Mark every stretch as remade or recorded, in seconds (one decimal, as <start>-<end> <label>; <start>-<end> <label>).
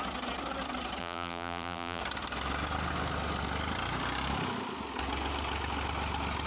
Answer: 0.0-1.0 recorded; 1.0-2.0 remade; 2.0-6.5 recorded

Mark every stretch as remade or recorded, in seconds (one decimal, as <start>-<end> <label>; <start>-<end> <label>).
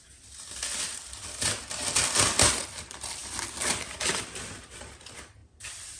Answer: 0.0-5.4 remade; 5.4-6.0 recorded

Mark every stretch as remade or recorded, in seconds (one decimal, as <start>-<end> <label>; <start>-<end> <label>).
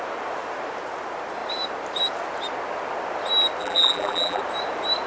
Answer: 0.0-3.6 recorded; 3.6-4.4 remade; 4.4-5.1 recorded